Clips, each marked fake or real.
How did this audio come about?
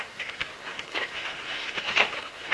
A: fake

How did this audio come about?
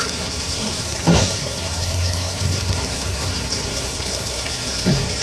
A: fake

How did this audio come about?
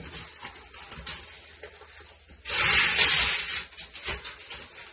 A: real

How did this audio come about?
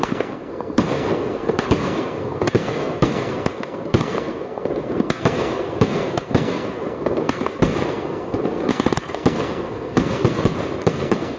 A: fake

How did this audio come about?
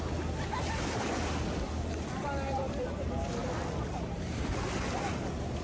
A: real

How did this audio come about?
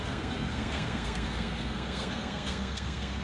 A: fake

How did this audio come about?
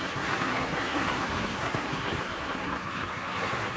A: fake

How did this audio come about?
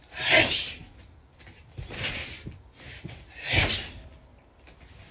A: real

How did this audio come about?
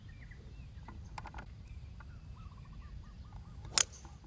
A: real